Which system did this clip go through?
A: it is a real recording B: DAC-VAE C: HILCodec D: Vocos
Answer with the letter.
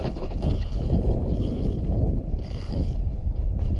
C